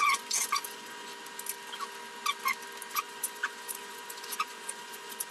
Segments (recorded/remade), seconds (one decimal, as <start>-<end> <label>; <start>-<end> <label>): 0.0-1.1 remade; 1.1-2.9 recorded; 2.9-5.3 remade